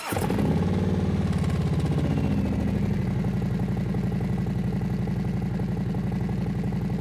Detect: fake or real real